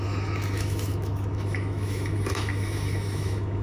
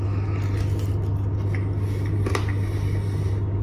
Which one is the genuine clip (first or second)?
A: second